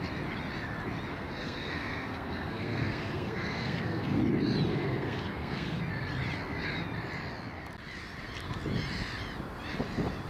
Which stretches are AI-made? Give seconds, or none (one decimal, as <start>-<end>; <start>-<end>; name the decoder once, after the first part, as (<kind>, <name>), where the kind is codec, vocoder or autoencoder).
1.1-4.2 (codec, SNAC); 4.7-5.8